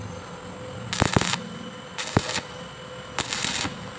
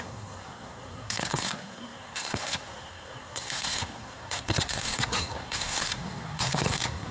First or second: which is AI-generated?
second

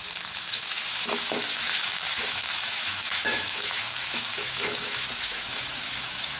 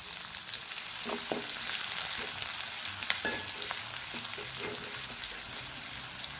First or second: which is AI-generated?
first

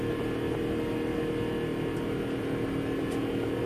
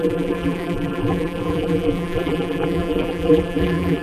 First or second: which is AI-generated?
second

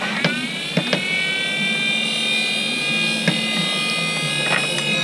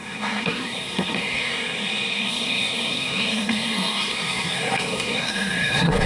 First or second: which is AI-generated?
second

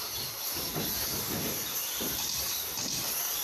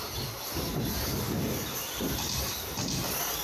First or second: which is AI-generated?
first